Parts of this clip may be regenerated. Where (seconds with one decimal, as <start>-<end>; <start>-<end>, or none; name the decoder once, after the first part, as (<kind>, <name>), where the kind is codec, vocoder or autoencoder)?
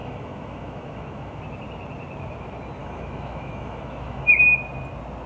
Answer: 0.0-1.4 (autoencoder, DAC-VAE); 2.8-4.3